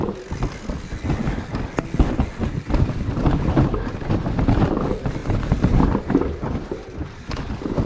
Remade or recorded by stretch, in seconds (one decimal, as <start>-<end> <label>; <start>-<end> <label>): 0.0-2.4 recorded; 2.4-4.1 remade; 4.1-5.2 recorded; 5.2-7.3 remade; 7.3-7.9 recorded